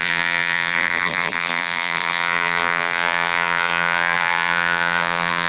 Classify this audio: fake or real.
fake